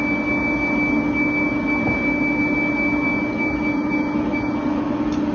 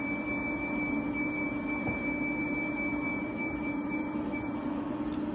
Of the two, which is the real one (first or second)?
first